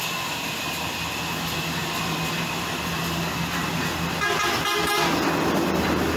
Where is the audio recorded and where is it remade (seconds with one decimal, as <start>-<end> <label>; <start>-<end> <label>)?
0.0-1.8 recorded; 1.8-4.9 remade; 4.9-6.2 recorded